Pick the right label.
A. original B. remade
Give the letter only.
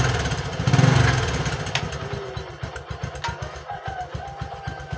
A